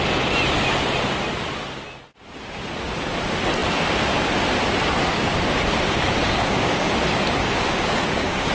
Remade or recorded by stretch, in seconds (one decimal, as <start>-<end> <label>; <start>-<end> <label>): 0.0-6.2 recorded; 6.2-6.9 remade; 6.9-7.4 recorded; 7.4-8.5 remade